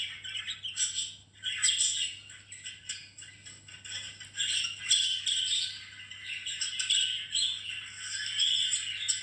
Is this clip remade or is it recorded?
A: recorded